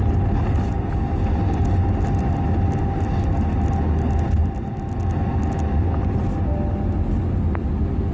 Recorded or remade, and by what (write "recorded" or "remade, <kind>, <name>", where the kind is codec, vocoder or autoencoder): recorded